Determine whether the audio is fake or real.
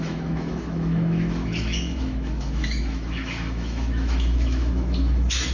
fake